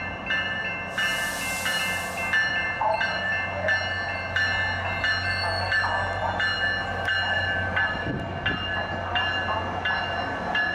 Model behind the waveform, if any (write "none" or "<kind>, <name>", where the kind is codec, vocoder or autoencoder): none